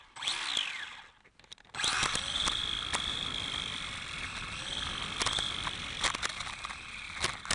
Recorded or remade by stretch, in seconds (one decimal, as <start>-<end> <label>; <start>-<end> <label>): 0.0-7.5 recorded